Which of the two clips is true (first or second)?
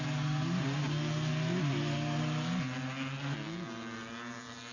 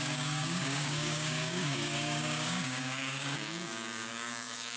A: first